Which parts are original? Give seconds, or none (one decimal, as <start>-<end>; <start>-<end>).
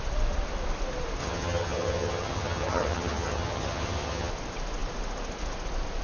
0.0-1.2; 4.3-6.0